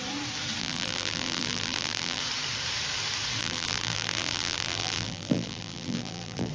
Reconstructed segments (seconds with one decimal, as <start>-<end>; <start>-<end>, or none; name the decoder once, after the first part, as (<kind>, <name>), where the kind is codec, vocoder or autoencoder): 0.6-2.2 (vocoder, BigVGAN v2); 3.4-6.5